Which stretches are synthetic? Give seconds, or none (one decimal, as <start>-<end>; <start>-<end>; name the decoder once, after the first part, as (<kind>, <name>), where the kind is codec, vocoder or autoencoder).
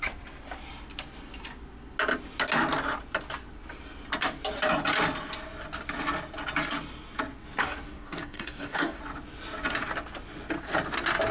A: 7.6-9.0 (codec, DAC)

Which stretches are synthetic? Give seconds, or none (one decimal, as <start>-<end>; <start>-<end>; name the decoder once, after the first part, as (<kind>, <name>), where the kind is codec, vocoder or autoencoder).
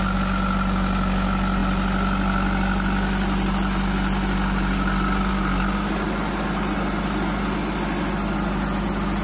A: none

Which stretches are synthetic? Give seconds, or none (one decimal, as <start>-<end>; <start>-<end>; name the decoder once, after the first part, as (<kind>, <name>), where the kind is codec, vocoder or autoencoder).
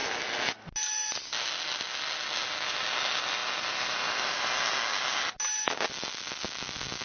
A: none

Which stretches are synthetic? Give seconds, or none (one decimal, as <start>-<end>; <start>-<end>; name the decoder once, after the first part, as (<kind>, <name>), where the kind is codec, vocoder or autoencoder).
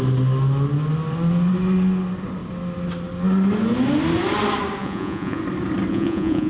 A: 4.8-5.4 (vocoder, Vocos); 5.9-6.5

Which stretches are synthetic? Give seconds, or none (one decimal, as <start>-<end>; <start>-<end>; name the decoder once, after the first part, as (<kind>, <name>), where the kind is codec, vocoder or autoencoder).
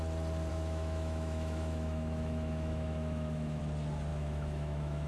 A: 0.5-3.6 (autoencoder, DAC-VAE); 4.1-5.1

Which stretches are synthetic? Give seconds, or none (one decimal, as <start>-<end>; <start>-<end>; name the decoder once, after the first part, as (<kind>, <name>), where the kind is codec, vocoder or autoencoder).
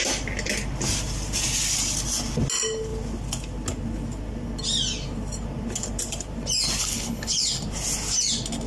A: 6.8-7.6 (codec, HILCodec)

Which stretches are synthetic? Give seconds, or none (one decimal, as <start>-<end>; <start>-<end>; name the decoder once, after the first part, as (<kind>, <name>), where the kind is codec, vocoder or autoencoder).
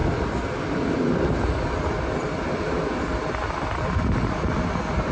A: none